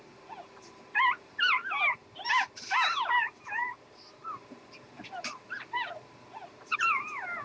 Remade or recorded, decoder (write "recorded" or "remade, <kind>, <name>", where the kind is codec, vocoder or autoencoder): remade, vocoder, BigVGAN v2